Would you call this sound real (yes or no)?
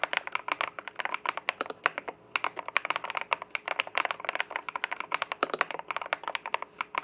yes